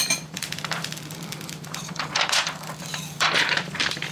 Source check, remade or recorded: remade